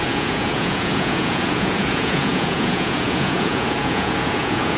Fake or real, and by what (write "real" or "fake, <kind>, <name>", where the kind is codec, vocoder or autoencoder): fake, vocoder, Vocos